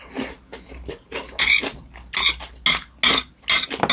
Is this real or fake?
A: real